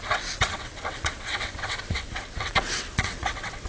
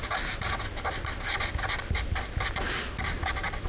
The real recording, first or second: second